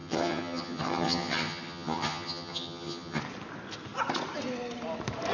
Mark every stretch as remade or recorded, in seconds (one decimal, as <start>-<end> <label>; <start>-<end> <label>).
0.0-3.2 remade; 3.2-5.3 recorded